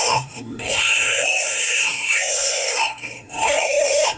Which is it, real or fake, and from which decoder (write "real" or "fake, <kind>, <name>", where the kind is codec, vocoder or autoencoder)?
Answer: fake, codec, SNAC